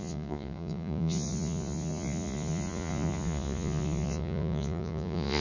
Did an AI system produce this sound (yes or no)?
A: yes